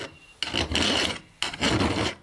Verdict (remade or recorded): recorded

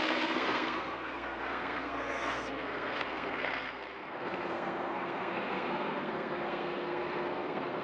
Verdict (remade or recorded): remade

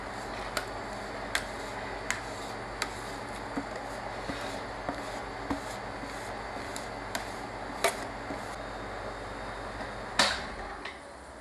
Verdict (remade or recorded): recorded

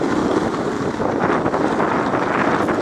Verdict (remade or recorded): recorded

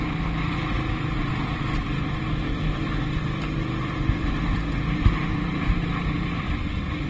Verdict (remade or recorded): recorded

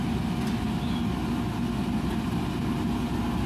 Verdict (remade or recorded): recorded